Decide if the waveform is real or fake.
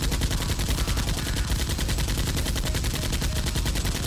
real